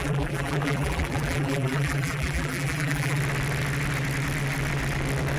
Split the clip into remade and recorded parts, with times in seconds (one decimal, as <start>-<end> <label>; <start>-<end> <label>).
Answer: 0.0-3.2 remade; 3.2-5.4 recorded